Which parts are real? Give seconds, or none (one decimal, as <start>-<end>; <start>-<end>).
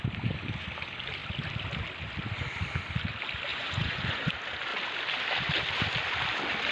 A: 0.0-3.5; 4.3-6.7